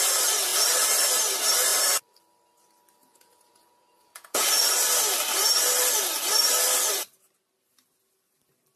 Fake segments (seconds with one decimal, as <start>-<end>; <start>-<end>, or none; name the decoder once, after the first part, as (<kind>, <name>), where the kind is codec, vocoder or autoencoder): 3.0-4.5 (vocoder, Vocos)